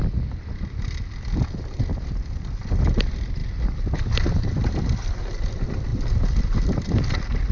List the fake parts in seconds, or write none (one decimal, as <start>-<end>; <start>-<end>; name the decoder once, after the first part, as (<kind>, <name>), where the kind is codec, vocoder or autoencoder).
none